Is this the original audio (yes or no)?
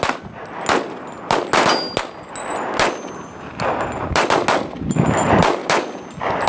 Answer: yes